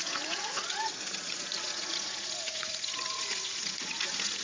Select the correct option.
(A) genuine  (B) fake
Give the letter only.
B